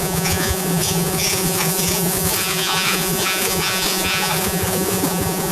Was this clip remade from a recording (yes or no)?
yes